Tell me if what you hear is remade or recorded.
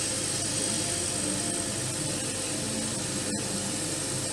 recorded